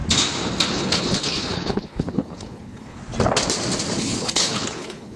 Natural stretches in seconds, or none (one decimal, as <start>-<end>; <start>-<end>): 0.0-0.7; 3.0-4.0